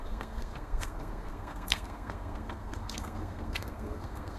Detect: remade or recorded remade